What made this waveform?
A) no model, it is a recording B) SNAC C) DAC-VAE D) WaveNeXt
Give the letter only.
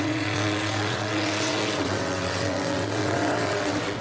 D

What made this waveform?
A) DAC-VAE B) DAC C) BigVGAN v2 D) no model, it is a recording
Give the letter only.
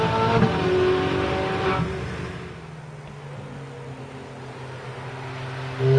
D